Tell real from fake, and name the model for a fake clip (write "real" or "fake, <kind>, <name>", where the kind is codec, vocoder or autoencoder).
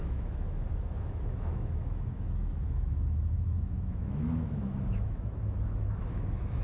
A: fake, autoencoder, DAC-VAE